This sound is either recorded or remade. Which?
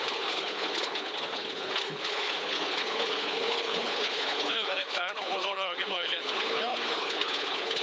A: remade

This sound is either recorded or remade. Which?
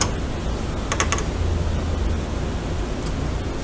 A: recorded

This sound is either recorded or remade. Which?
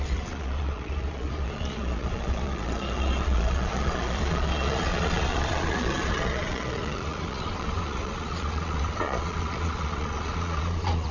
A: remade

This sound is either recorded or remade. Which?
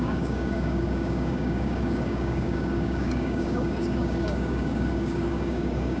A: remade